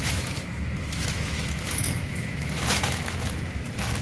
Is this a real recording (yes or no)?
no